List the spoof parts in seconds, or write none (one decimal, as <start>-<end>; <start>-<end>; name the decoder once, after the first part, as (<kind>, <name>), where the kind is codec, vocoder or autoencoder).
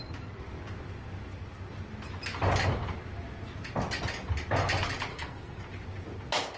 5.1-5.6 (codec, SNAC)